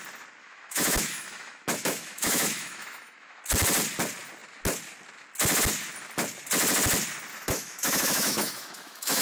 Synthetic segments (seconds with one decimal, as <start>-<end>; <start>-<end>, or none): 0.4-3.4; 7.3-9.2